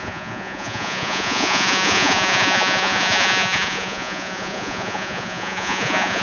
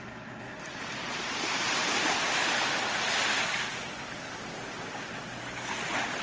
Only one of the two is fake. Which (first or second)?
first